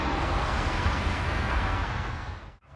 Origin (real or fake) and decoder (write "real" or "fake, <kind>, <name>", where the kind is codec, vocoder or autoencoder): fake, codec, SNAC